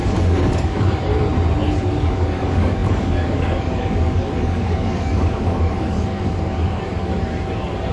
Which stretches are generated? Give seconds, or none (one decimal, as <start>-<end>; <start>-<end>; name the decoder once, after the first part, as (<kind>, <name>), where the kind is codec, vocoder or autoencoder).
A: 0.0-1.1 (codec, DAC); 2.0-7.1